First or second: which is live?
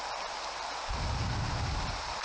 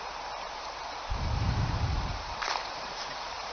first